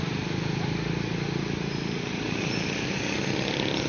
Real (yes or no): yes